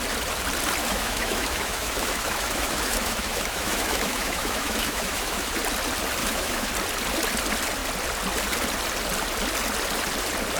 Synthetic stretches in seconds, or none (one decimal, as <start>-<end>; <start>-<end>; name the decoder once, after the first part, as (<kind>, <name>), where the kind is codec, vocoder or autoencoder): 0.8-5.5 (autoencoder, DAC-VAE); 6.2-6.7

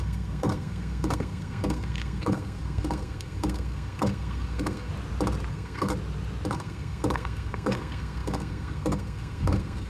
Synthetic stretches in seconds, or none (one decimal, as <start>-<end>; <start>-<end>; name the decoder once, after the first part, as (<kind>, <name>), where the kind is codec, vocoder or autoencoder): 0.0-4.9 (codec, SNAC); 5.5-5.9; 6.5-9.9

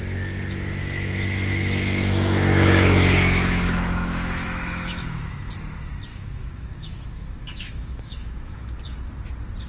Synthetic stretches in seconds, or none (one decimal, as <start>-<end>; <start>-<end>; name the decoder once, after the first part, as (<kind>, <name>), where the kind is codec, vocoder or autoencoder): 0.8-5.5 (autoencoder, DAC-VAE); 6.1-8.7

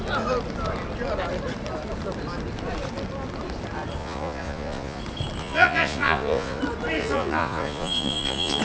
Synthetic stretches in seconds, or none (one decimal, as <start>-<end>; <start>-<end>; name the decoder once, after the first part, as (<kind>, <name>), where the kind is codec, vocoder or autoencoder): 4.0-5.0 (vocoder, Vocos); 5.4-6.6; 7.0-8.6

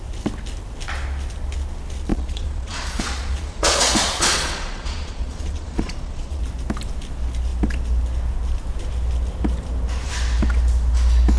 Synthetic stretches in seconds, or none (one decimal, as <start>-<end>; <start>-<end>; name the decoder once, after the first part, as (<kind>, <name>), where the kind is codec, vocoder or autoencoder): 2.1-6.4 (vocoder, Vocos)

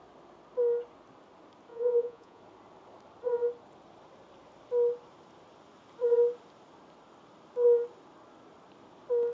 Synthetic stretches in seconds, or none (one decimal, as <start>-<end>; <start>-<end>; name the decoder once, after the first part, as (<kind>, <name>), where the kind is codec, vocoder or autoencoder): 1.7-2.4 (vocoder, Vocos)